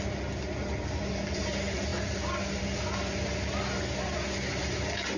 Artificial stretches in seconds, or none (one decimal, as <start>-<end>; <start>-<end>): none